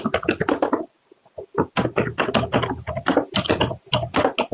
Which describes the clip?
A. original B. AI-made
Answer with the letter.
A